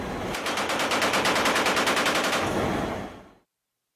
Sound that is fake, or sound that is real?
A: real